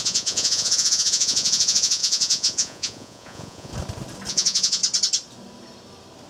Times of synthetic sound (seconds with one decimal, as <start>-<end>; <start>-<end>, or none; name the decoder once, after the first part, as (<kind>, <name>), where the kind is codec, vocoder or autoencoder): 0.0-3.7 (vocoder, Vocos); 4.3-4.8